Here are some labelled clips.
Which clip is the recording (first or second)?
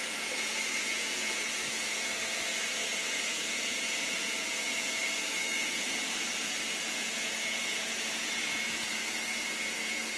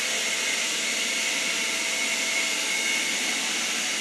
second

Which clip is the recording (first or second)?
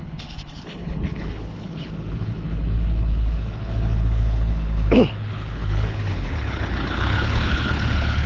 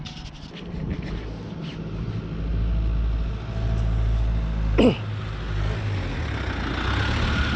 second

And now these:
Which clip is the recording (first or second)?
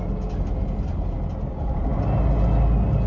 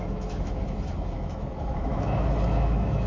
first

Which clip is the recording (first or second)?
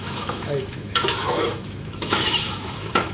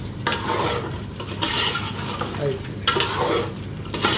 second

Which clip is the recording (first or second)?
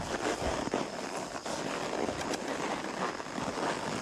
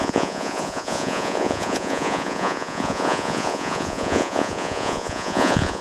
first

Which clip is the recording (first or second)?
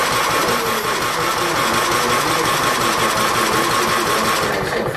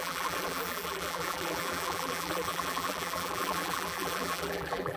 first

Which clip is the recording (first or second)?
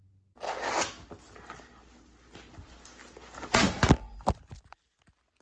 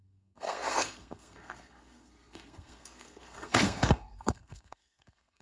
first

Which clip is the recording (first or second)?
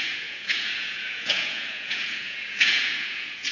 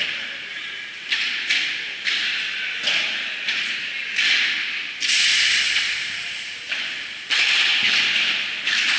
second